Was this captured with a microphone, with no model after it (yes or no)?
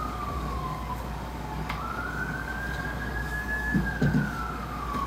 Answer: no